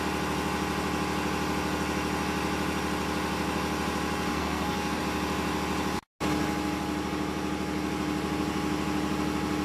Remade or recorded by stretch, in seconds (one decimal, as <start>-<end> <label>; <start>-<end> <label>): 0.0-4.3 recorded; 4.3-5.0 remade; 5.0-9.6 recorded